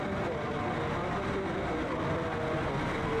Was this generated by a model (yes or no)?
no